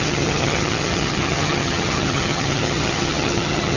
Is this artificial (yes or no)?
yes